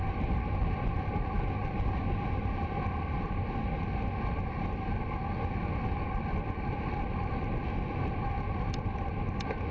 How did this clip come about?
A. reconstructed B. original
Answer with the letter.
B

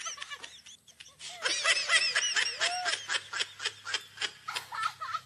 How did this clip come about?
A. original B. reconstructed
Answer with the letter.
A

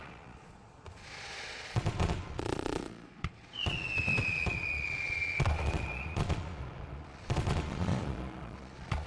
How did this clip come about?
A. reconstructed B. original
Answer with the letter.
A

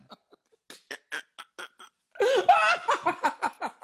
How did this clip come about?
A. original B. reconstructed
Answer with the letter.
A